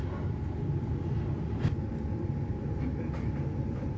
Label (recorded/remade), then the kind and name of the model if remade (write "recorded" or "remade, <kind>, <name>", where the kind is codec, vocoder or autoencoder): recorded